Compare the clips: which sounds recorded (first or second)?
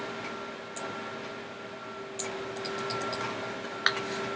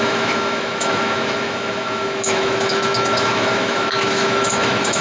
first